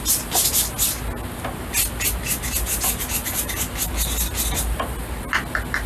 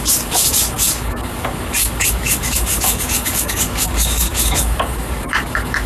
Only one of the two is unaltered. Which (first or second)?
first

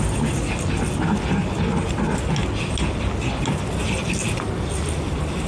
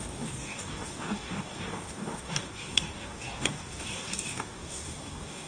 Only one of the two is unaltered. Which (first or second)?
first